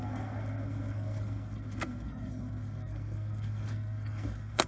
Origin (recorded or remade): remade